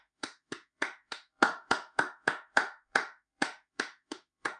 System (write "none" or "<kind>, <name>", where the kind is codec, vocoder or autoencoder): autoencoder, DAC-VAE